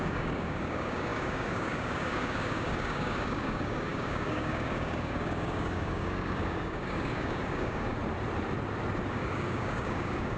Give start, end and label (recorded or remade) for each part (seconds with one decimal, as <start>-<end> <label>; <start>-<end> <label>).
0.0-8.0 remade; 8.0-9.1 recorded; 9.1-10.4 remade